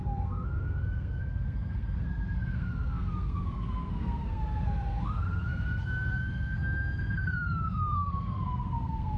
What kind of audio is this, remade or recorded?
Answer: remade